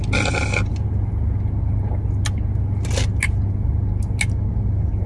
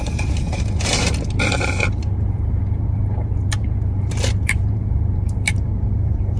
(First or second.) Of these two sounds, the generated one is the second